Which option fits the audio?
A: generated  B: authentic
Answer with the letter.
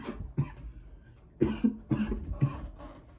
B